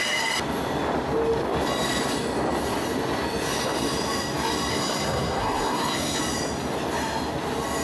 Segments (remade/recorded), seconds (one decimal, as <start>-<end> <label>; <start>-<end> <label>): 0.0-4.7 recorded; 4.7-6.2 remade; 6.2-7.8 recorded